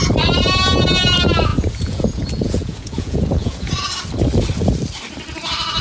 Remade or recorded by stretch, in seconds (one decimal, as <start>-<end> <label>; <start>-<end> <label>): 0.0-1.5 recorded; 1.5-3.7 remade; 3.7-5.8 recorded